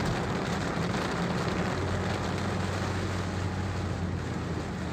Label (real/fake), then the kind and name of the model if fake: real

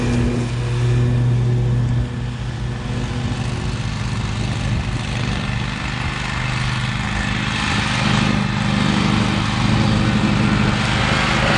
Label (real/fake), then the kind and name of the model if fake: real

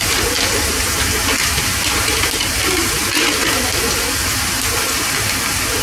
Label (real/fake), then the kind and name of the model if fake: real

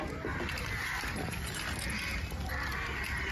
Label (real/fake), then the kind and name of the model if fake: real